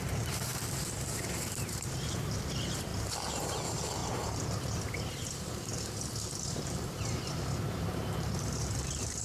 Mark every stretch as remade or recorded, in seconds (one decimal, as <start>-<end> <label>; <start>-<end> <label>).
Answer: 0.0-2.9 remade; 2.9-3.4 recorded; 3.4-5.7 remade; 5.7-6.5 recorded; 6.5-9.2 remade